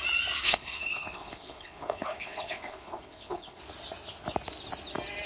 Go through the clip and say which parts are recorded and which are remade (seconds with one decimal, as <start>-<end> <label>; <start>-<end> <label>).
0.0-0.4 recorded; 0.4-3.6 remade; 3.6-5.3 recorded